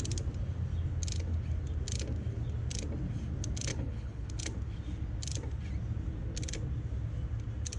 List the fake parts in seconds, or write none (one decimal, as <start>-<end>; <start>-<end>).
3.7-4.3